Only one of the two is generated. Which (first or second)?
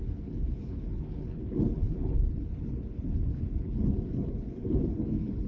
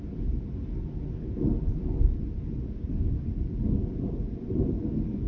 first